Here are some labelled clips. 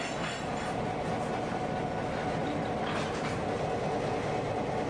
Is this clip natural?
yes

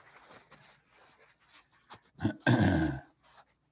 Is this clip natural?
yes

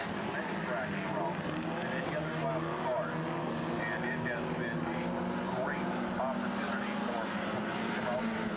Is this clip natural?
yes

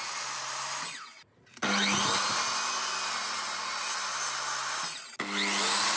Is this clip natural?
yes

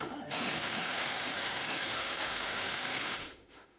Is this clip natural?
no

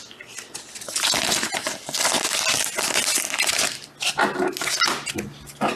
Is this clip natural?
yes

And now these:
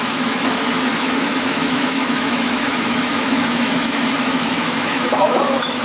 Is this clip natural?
no